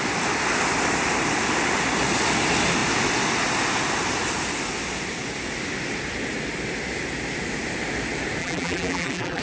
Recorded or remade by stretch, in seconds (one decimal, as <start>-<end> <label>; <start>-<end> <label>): 0.0-8.4 recorded; 8.4-9.4 remade

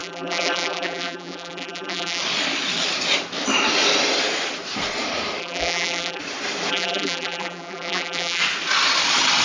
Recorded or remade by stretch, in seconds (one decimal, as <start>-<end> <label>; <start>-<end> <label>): 0.0-2.2 remade; 2.2-5.4 recorded; 5.4-6.2 remade; 6.2-6.7 recorded; 6.7-8.4 remade; 8.4-9.4 recorded

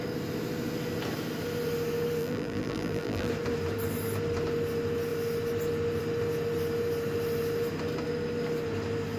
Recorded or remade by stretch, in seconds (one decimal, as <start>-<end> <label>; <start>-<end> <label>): 0.0-2.2 recorded; 2.2-3.3 remade; 3.3-9.2 recorded

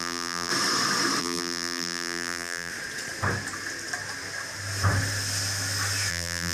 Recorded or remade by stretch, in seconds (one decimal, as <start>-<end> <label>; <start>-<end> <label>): 0.0-0.5 remade; 0.5-1.2 recorded; 1.2-2.7 remade; 2.7-6.1 recorded; 6.1-6.5 remade

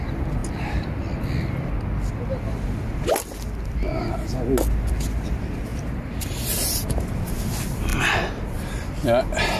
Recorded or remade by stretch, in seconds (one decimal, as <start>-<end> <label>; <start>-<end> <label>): 0.0-5.7 recorded; 5.7-7.0 remade; 7.0-7.9 recorded; 7.9-9.6 remade